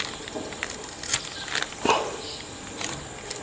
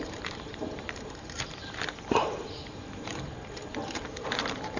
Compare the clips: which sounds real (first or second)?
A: first